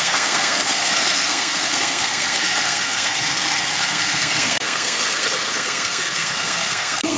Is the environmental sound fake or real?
fake